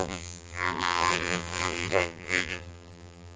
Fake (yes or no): yes